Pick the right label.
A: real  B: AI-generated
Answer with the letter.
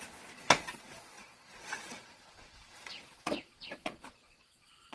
B